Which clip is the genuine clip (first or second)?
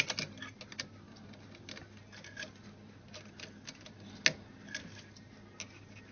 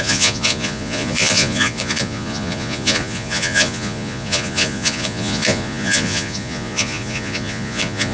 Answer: first